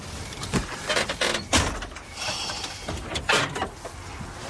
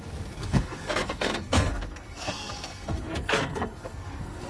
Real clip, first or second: first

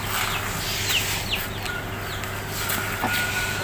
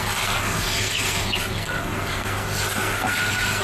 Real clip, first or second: first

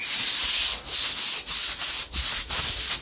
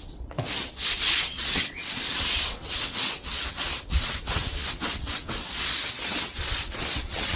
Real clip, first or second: first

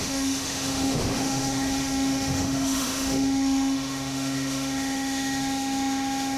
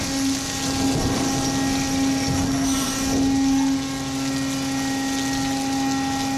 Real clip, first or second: second